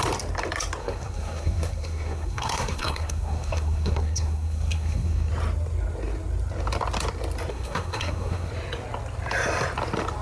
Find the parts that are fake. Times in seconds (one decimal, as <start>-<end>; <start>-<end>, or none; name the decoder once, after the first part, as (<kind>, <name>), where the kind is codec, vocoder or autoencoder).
0.8-5.3 (codec, SNAC); 7.5-8.5